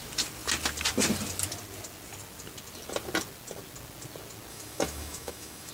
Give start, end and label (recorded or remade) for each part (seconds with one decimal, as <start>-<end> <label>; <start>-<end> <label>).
0.0-4.5 recorded; 4.5-5.7 remade